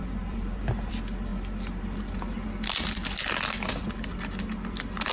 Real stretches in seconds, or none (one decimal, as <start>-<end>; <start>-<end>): 0.9-5.1